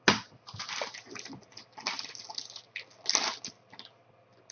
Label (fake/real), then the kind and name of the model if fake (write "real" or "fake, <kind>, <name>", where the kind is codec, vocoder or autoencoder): real